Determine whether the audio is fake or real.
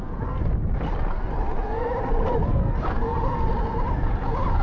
real